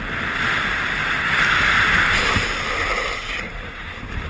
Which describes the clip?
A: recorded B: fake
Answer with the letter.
B